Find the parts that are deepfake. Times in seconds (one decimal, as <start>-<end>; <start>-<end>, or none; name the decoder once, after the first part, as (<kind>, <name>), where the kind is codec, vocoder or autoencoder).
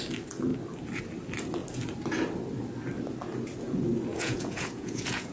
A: 4.1-5.3 (vocoder, Vocos)